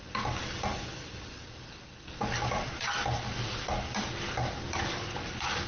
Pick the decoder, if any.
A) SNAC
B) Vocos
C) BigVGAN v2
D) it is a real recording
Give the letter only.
D